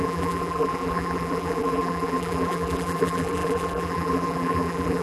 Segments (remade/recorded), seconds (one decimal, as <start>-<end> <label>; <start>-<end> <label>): 0.0-5.0 remade